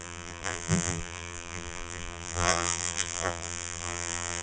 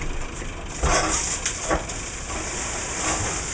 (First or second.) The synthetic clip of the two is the first